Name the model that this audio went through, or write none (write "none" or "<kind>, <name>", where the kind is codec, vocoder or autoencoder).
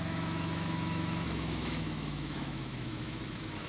autoencoder, DAC-VAE